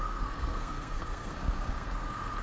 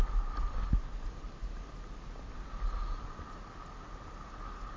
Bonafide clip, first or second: second